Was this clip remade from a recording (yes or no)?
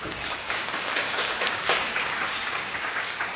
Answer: yes